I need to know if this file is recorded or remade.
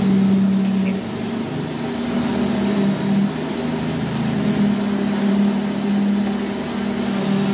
recorded